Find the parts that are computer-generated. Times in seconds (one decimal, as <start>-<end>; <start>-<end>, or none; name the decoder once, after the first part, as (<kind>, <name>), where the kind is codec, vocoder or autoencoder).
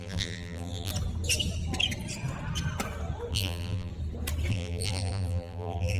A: 0.0-0.9 (vocoder, BigVGAN v2); 3.3-3.9; 4.5-6.0